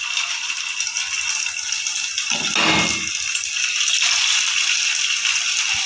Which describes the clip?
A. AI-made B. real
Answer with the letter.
B